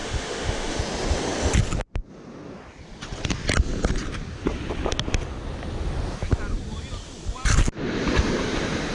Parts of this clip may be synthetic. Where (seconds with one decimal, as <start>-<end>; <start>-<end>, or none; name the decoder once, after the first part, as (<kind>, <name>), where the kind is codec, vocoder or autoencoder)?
0.0-0.8 (autoencoder, DAC-VAE)